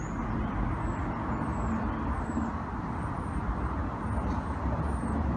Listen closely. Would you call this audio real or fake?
real